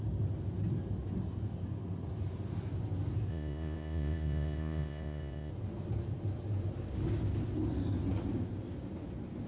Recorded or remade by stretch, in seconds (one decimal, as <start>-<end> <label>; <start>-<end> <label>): 0.0-3.3 recorded; 3.3-5.5 remade; 5.5-9.5 recorded